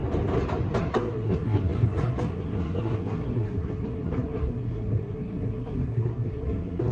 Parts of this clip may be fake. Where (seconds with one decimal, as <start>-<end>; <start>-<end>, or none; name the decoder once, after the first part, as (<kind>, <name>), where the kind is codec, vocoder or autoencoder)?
0.8-6.9 (codec, SNAC)